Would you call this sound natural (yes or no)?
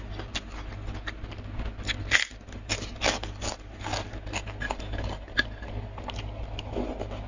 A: yes